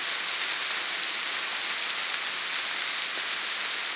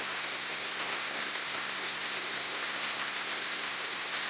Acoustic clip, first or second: first